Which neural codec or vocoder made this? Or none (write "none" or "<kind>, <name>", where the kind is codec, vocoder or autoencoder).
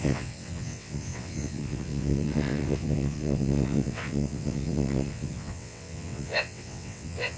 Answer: vocoder, WaveNeXt